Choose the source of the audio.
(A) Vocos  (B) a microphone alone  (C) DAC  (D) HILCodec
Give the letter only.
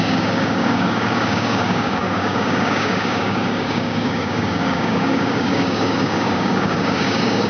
C